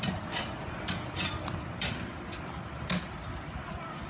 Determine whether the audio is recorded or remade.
recorded